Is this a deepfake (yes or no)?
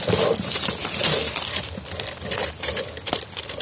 no